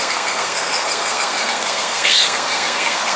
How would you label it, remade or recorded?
remade